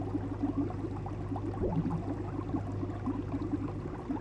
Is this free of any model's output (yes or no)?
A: yes